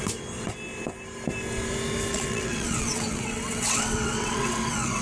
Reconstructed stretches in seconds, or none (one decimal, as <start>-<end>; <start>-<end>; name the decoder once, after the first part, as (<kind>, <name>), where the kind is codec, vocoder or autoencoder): 2.1-5.0 (vocoder, WaveNeXt)